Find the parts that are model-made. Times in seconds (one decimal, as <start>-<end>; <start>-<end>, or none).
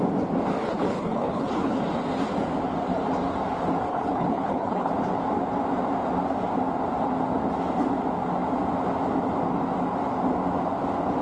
0.6-1.8; 3.9-4.9